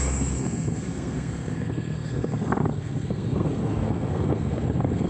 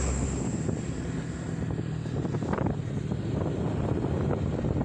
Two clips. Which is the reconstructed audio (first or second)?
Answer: first